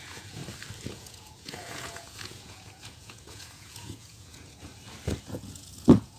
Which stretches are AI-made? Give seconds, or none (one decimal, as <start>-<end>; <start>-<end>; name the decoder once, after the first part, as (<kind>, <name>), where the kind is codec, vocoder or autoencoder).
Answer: 0.0-0.4 (vocoder, Vocos); 0.9-4.7; 5.2-6.2